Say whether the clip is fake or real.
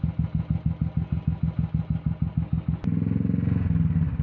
real